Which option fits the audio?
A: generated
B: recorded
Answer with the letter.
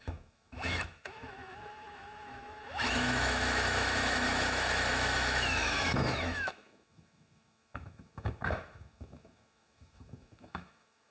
A